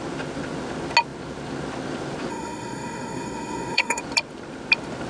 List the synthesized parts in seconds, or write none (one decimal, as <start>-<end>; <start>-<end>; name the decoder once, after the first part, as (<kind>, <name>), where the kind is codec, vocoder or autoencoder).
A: 2.3-4.0 (codec, SNAC)